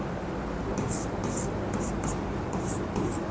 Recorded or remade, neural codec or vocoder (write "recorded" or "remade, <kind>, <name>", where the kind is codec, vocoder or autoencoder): recorded